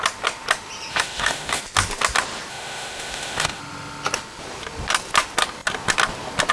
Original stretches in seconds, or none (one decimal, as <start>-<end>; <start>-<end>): 0.0-0.9; 1.6-2.5; 3.6-6.5